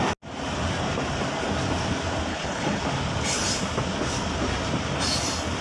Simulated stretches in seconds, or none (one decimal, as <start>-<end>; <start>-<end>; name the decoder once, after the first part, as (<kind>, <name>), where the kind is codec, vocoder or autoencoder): 2.3-2.8 (codec, HILCodec)